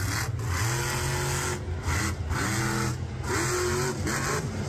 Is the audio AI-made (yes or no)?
no